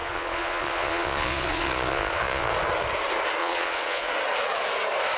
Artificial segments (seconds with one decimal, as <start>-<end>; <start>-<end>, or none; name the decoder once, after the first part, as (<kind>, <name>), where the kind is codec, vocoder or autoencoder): 0.0-2.5 (vocoder, Vocos); 3.4-4.1